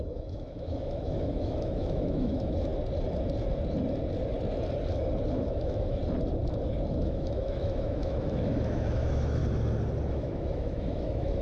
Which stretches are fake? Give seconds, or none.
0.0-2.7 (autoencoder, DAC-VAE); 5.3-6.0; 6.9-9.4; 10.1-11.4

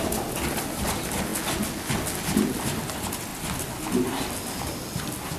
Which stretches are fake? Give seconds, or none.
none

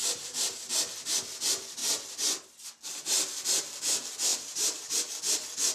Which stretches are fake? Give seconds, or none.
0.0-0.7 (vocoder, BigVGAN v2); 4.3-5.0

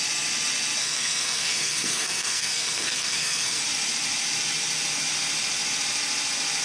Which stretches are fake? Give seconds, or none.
0.8-3.6 (codec, SNAC)

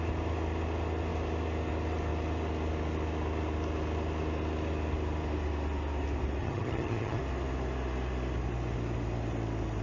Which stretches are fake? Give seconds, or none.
6.4-7.2 (vocoder, HiFi-GAN)

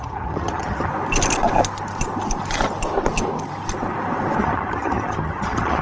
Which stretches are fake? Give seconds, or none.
0.0-0.9 (vocoder, HiFi-GAN); 4.4-5.8

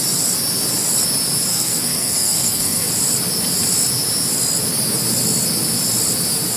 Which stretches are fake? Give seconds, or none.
1.5-2.9 (codec, SNAC)